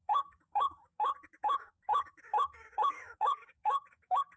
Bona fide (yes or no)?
no